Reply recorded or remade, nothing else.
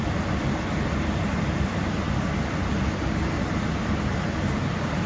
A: recorded